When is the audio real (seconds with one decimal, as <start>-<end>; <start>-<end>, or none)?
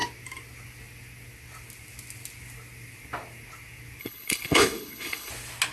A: 0.0-4.0; 5.3-5.7